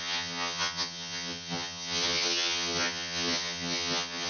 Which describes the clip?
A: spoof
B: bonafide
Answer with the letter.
A